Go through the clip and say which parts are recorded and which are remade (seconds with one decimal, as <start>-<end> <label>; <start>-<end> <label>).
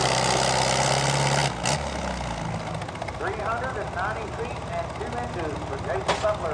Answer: 0.0-6.5 recorded